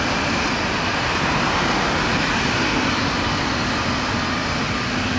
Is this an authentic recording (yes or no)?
yes